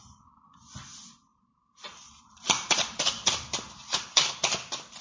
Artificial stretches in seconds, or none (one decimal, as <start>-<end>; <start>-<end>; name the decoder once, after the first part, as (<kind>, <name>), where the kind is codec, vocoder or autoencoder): 1.3-4.3 (vocoder, BigVGAN v2)